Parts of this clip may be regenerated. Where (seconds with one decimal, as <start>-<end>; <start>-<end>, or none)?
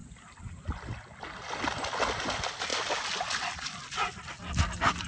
none